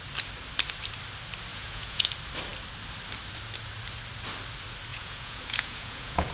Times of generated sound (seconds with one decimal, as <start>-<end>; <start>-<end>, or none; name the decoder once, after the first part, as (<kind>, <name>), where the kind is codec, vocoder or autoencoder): 1.5-2.1 (vocoder, Vocos); 4.9-6.3